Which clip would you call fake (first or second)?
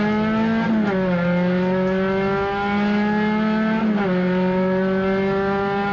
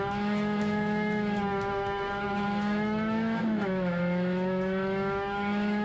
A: second